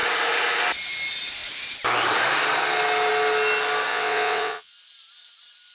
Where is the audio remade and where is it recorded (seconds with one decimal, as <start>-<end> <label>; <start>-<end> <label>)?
0.0-3.9 recorded; 3.9-4.7 remade; 4.7-5.7 recorded